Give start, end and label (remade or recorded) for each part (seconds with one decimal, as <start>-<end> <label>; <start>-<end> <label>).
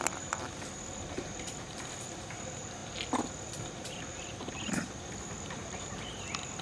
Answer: 0.0-2.8 remade; 2.8-3.7 recorded; 3.7-6.6 remade